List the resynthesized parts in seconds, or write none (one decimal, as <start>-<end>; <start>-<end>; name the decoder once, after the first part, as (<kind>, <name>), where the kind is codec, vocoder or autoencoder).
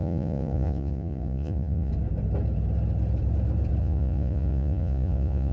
0.0-1.9 (vocoder, Vocos); 3.8-5.5